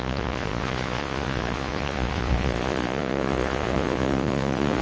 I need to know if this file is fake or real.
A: fake